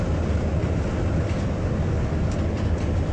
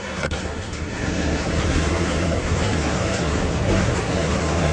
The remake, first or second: second